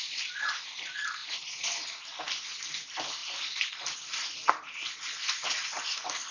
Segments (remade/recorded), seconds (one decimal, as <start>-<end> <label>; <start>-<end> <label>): 0.0-1.2 remade; 1.2-2.2 recorded; 2.2-3.2 remade; 3.2-5.6 recorded; 5.6-6.3 remade